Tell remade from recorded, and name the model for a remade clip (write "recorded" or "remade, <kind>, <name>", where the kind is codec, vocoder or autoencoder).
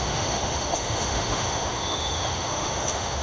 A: remade, autoencoder, DAC-VAE